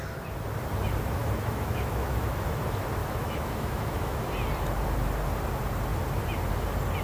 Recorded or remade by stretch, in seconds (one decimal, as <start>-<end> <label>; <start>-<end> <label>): 0.0-1.2 recorded; 1.2-2.6 remade; 2.6-3.0 recorded; 3.0-4.3 remade; 4.3-7.0 recorded